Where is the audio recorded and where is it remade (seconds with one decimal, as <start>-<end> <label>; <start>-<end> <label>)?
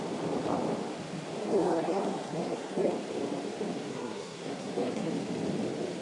0.0-1.4 recorded; 1.4-2.9 remade; 2.9-3.9 recorded; 3.9-5.1 remade; 5.1-6.0 recorded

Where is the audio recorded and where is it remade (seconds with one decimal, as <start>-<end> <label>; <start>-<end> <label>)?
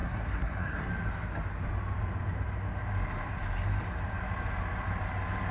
0.0-0.9 remade; 0.9-5.5 recorded